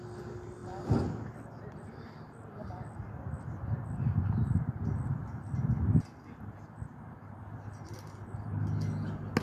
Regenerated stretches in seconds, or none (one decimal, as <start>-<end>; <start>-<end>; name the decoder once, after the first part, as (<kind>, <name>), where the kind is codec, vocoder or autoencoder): 6.9-7.4 (vocoder, BigVGAN v2)